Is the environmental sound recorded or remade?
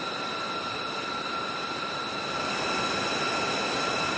recorded